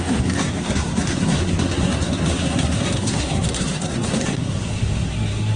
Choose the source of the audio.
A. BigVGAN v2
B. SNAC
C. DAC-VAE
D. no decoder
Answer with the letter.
B